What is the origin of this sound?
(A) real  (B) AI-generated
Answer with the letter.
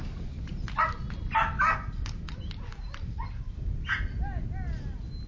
A